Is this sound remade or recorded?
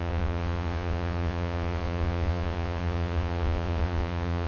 remade